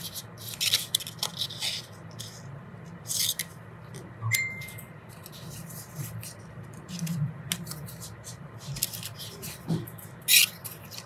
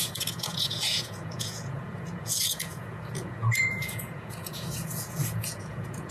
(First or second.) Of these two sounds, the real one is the first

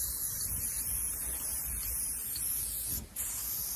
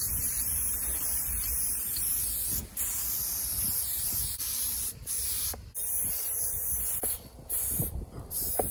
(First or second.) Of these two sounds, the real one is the first